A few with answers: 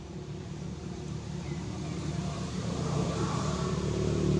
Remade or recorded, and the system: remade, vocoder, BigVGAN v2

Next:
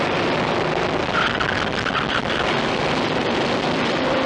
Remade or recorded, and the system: recorded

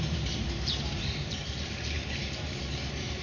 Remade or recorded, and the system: remade, vocoder, BigVGAN v2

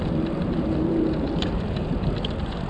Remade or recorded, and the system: remade, vocoder, BigVGAN v2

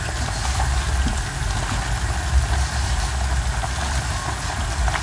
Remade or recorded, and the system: recorded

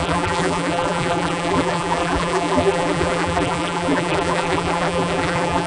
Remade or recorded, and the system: remade, vocoder, BigVGAN v2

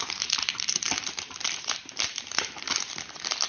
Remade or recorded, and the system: remade, vocoder, BigVGAN v2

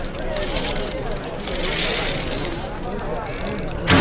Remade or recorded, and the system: recorded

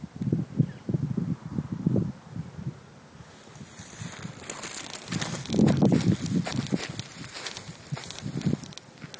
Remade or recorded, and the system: recorded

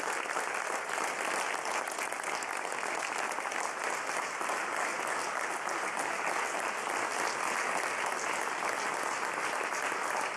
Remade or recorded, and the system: recorded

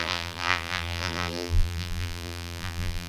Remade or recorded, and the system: remade, vocoder, BigVGAN v2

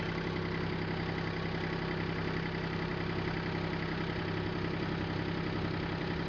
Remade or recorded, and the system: recorded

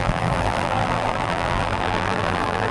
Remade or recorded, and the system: remade, vocoder, BigVGAN v2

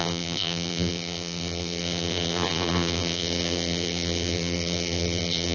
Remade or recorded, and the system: remade, vocoder, BigVGAN v2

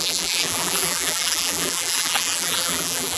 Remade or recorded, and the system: remade, vocoder, BigVGAN v2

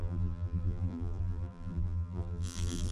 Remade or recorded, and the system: remade, vocoder, BigVGAN v2